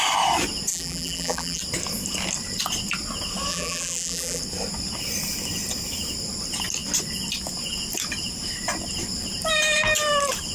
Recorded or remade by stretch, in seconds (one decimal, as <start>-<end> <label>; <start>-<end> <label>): 0.0-0.7 recorded; 0.7-1.6 remade; 1.6-3.5 recorded; 3.5-4.4 remade; 4.4-10.5 recorded